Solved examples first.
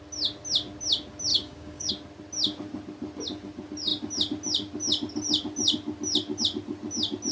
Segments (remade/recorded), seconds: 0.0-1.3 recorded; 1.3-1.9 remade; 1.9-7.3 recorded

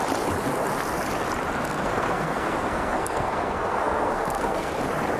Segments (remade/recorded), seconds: 0.0-1.6 recorded; 1.6-4.7 remade; 4.7-5.2 recorded

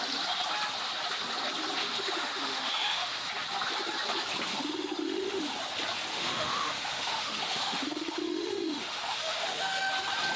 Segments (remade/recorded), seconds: 0.0-1.8 recorded; 1.8-3.3 remade; 3.3-4.5 recorded; 4.5-5.4 remade; 5.4-6.1 recorded; 6.1-9.9 remade; 9.9-10.4 recorded

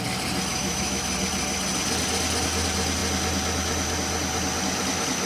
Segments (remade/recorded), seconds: 0.0-0.5 recorded; 0.5-1.1 remade; 1.1-5.3 recorded

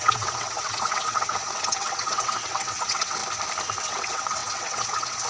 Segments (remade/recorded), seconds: 0.0-3.2 remade; 3.2-3.9 recorded; 3.9-5.3 remade

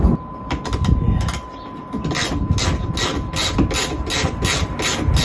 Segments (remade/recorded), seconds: 0.0-5.2 recorded

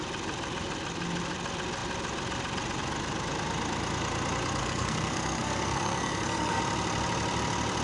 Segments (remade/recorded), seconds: 0.0-4.6 recorded; 4.6-6.6 remade; 6.6-7.8 recorded